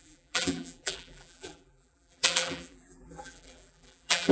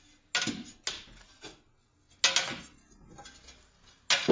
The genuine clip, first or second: second